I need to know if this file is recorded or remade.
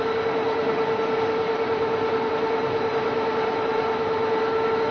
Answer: recorded